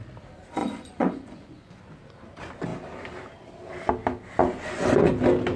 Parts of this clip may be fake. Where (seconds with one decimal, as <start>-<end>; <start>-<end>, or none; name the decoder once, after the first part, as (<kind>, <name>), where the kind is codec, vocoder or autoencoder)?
0.6-1.8 (vocoder, Vocos); 4.4-5.1